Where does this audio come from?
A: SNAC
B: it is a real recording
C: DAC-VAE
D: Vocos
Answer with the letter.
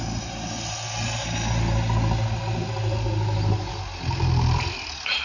B